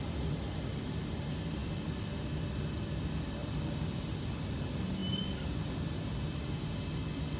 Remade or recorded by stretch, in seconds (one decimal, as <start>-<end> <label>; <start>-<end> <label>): 0.0-7.4 recorded